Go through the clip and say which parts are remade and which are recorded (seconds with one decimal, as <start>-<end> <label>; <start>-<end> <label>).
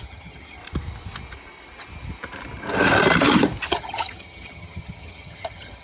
0.0-0.6 remade; 0.6-3.7 recorded; 3.7-5.8 remade